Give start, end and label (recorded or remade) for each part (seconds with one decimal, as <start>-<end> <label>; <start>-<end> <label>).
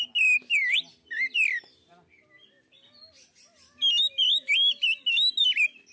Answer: 0.0-5.9 recorded